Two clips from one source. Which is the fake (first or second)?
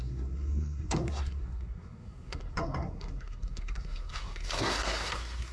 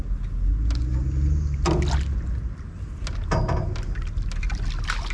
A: first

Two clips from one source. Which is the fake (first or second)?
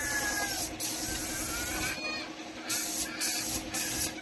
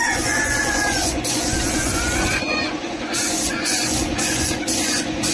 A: second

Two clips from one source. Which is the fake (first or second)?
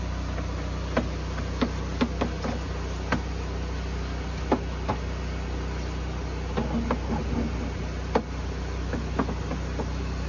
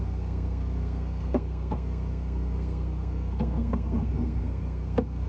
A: second